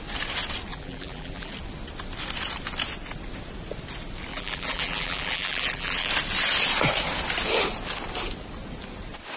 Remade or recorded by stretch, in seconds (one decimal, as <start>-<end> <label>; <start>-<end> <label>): 0.0-0.7 recorded; 0.7-1.5 remade; 1.5-4.3 recorded; 4.3-6.1 remade; 6.1-9.4 recorded